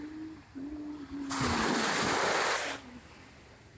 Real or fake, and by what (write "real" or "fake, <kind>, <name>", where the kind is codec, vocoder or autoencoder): real